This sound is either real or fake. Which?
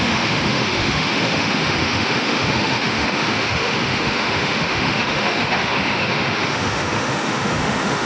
fake